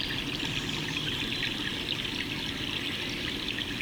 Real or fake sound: real